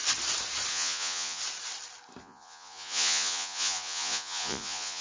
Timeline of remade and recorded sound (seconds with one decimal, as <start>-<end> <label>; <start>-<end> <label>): 0.0-0.7 recorded; 0.7-1.4 remade; 1.4-2.2 recorded; 2.2-5.0 remade